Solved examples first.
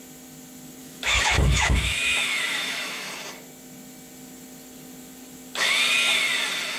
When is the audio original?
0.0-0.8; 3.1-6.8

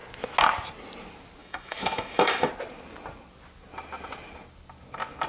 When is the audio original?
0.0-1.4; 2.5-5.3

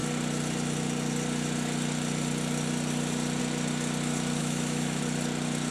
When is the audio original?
0.0-4.4; 5.0-5.7

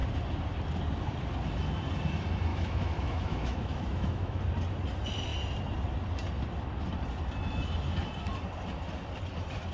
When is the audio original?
0.0-2.5; 4.4-9.7

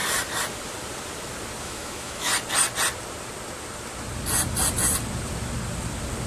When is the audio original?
0.0-1.6; 2.3-6.3

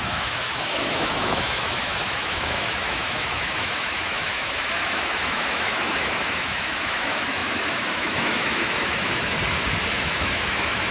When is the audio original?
9.3-9.9

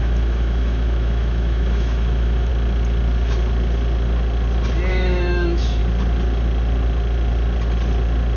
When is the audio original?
2.5-4.9; 5.8-8.4

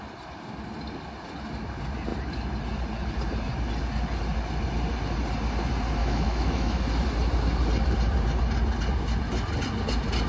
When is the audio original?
0.0-6.0; 6.8-10.3